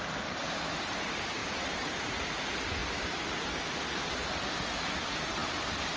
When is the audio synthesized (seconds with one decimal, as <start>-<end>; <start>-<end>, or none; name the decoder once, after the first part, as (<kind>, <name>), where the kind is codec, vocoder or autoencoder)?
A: none